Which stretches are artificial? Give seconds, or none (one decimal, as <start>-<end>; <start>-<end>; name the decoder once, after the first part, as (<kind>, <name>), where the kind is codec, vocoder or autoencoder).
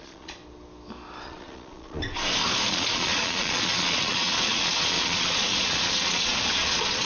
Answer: 0.0-0.4 (vocoder, Vocos); 1.2-2.0; 2.7-7.1